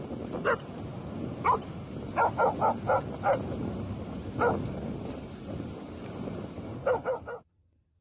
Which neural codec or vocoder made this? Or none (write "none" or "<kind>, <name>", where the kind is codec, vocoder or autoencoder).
none